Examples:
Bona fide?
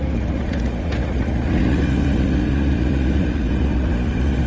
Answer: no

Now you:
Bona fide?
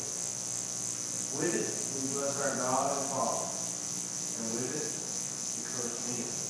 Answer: yes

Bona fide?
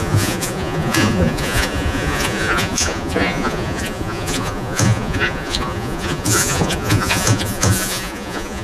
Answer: no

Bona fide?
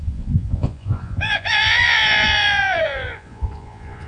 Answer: no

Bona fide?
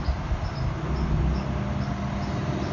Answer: yes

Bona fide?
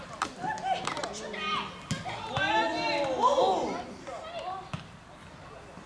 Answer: yes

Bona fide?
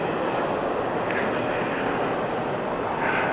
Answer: yes